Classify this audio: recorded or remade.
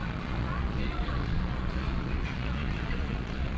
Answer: remade